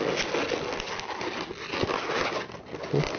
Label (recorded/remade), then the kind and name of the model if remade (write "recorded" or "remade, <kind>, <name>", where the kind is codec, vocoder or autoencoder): recorded